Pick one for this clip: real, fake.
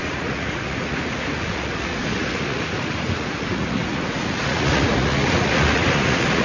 fake